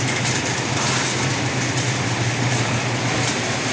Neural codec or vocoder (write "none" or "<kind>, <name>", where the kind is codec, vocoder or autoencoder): vocoder, BigVGAN v2